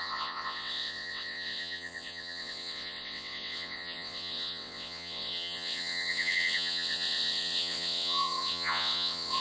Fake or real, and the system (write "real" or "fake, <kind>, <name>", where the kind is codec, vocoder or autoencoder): fake, vocoder, WaveNeXt